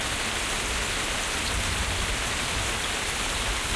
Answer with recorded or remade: recorded